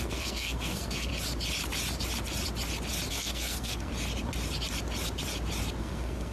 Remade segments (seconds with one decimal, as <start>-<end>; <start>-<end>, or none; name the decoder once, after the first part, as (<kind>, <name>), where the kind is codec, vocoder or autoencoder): 0.0-1.1 (codec, SNAC); 3.1-3.9; 5.8-6.3